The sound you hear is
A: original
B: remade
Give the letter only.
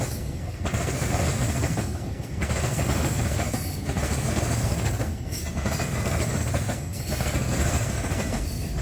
B